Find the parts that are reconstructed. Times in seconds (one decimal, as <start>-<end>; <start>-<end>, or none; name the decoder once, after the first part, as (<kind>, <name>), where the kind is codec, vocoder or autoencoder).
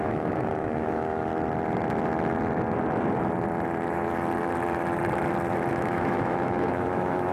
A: 0.0-1.3 (autoencoder, DAC-VAE); 5.7-7.3